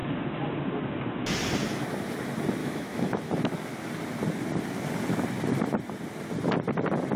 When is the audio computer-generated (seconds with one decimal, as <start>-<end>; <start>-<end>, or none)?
2.6-3.3